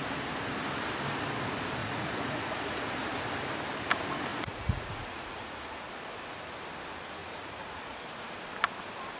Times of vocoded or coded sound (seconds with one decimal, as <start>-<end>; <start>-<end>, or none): 1.8-2.9; 4.3-5.9; 7.2-8.1